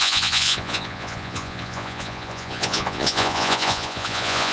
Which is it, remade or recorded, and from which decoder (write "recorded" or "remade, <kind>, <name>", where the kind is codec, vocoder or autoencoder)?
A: remade, vocoder, Vocos